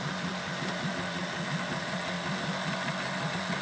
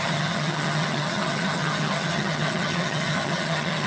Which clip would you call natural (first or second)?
first